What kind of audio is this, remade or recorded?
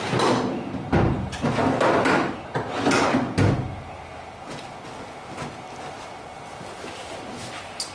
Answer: recorded